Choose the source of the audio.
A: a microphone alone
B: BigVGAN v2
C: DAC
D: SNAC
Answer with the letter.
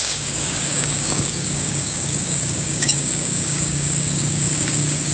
C